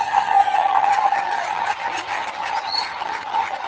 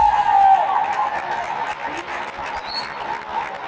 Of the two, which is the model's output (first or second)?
first